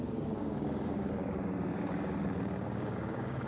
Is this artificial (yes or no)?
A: yes